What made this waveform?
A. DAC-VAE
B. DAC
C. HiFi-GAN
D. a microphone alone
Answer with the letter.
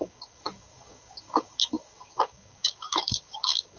B